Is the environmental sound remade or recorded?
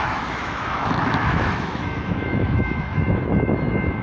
remade